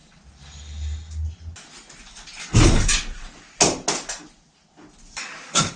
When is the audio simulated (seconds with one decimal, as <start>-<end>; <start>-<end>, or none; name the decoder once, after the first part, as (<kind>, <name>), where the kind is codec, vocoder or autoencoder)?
2.4-2.9 (codec, DAC); 5.1-5.8